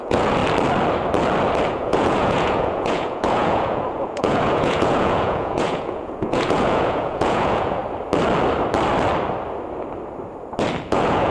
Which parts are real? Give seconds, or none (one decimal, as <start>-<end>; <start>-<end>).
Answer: 0.4-1.7; 7.8-10.8